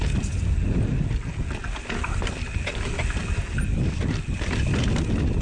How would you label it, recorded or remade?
recorded